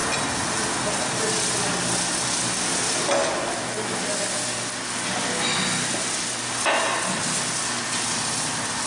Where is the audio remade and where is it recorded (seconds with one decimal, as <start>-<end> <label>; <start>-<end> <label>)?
0.0-8.9 recorded